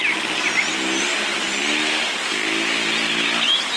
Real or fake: real